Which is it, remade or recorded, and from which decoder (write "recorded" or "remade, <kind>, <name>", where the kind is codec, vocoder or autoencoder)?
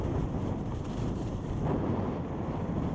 remade, vocoder, BigVGAN v2